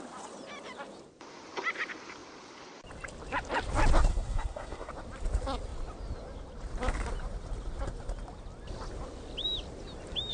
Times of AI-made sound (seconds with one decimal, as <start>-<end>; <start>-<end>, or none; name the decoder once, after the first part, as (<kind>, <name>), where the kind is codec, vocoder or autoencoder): 4.1-4.9 (codec, SNAC)